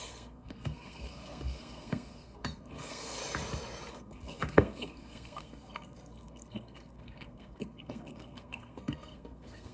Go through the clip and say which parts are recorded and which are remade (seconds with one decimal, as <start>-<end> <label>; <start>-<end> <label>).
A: 0.0-3.2 remade; 3.2-3.9 recorded; 3.9-9.7 remade